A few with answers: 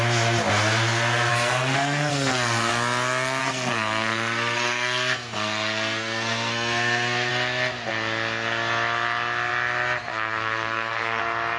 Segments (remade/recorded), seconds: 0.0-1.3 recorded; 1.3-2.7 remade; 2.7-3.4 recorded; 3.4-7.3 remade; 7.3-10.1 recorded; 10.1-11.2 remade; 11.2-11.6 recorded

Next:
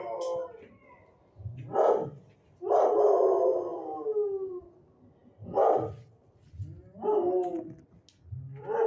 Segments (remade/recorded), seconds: 0.0-8.9 recorded

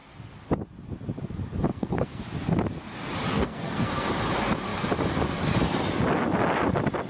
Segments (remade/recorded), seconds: 0.0-1.7 recorded; 1.7-2.2 remade; 2.2-3.3 recorded; 3.3-4.1 remade; 4.1-7.1 recorded